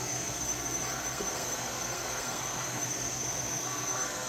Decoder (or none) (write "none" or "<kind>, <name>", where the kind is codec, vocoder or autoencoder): codec, SNAC